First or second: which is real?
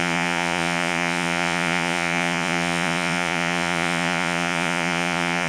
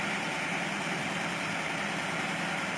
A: second